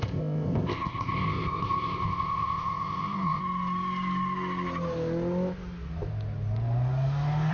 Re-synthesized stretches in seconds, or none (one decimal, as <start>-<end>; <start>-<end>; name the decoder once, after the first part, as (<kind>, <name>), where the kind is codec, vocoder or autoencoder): 0.0-3.4 (codec, ZipCodec)